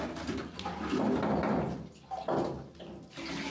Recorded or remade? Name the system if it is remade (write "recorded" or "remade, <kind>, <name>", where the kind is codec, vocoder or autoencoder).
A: recorded